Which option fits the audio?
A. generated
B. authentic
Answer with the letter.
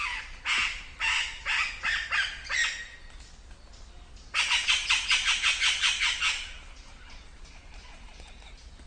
B